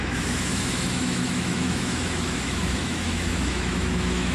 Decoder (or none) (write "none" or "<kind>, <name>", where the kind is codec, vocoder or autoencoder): autoencoder, DAC-VAE